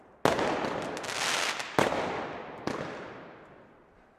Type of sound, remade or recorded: recorded